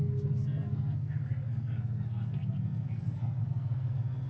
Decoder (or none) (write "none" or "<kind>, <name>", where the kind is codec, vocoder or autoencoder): codec, SNAC